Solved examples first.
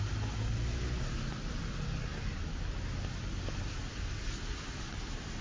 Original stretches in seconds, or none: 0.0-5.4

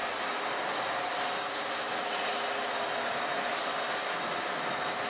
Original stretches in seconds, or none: 0.0-5.1

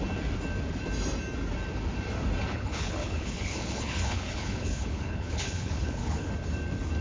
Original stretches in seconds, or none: 0.0-2.5; 6.3-7.0

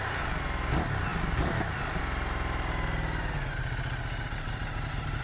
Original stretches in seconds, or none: 0.0-1.1; 2.0-5.2

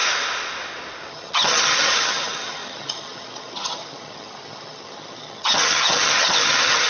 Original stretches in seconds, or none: 0.0-1.1